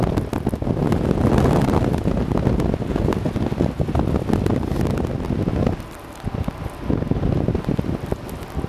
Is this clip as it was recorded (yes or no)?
yes